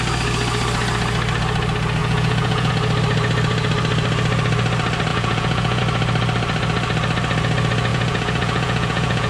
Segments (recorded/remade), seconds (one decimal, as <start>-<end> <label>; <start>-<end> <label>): 0.0-2.0 recorded; 2.0-2.7 remade; 2.7-5.1 recorded; 5.1-5.8 remade; 5.8-7.9 recorded; 7.9-9.3 remade